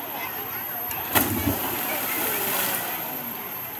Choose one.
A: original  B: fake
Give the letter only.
A